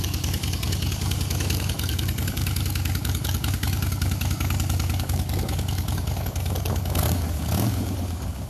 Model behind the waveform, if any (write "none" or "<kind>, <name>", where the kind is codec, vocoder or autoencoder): codec, DAC